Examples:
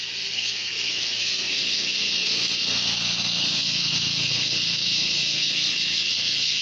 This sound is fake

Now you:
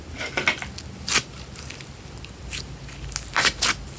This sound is real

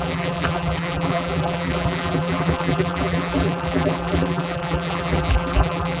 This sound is fake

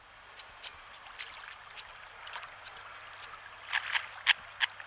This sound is real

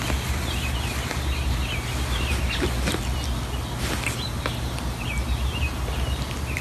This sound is real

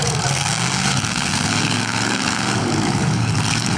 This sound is fake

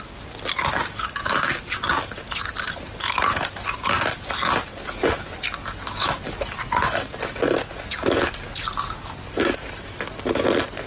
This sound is real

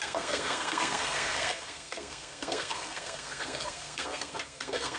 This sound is fake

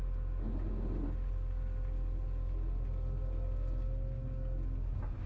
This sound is real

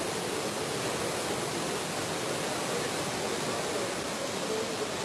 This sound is real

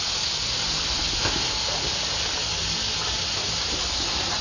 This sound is real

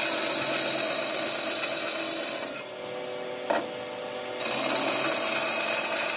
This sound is real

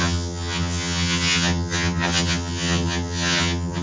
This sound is fake